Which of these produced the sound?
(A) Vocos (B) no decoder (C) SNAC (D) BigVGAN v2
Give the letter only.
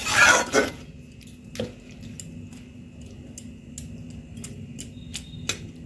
B